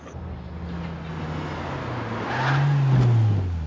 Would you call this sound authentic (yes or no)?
yes